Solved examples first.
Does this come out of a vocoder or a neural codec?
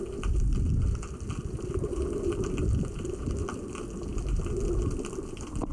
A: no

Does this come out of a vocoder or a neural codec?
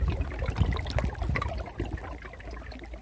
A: no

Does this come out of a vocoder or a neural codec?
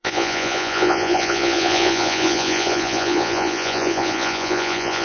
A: yes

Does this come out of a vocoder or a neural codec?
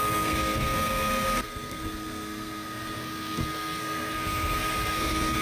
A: yes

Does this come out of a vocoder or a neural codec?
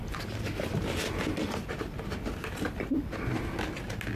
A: no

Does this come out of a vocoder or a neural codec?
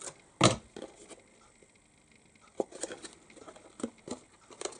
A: no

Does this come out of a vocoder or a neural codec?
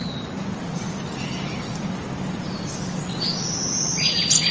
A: no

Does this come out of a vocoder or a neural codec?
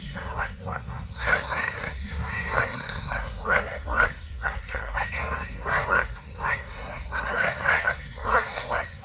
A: yes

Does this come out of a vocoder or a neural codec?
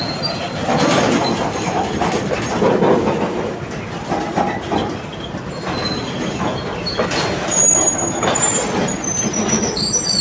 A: no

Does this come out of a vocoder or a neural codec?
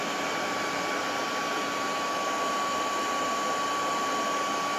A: no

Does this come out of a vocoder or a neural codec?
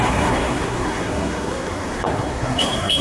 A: yes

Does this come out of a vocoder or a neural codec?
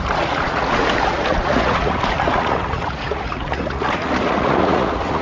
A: yes